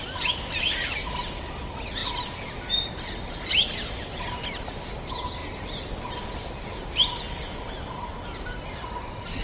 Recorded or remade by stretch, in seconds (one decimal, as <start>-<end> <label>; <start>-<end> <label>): 0.0-9.4 recorded